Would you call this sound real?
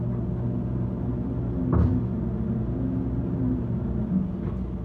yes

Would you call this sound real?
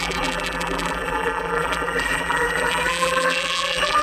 no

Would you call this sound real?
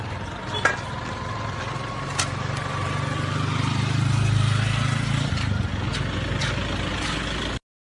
yes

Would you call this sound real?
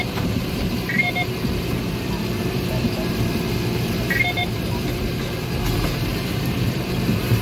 no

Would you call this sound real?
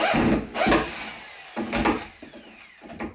yes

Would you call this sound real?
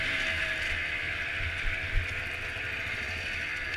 yes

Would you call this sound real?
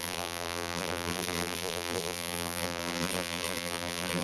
no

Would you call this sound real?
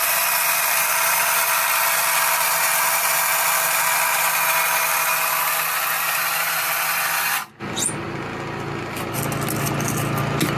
yes